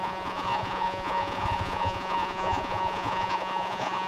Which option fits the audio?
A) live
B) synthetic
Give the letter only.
B